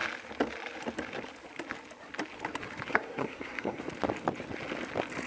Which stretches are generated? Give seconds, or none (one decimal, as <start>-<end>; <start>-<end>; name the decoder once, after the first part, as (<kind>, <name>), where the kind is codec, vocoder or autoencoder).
2.9-3.8 (codec, SNAC)